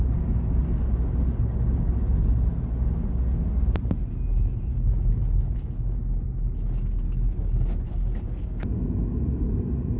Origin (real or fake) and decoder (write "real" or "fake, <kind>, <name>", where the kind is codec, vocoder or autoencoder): real